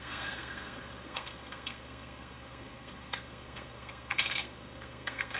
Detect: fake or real fake